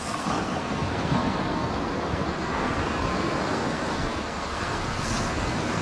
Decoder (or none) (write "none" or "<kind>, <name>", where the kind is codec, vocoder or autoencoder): codec, SNAC